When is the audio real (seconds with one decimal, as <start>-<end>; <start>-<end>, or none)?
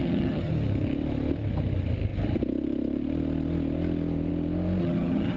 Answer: 0.5-4.8